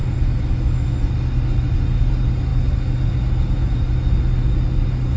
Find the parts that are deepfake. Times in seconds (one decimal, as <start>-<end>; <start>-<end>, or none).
none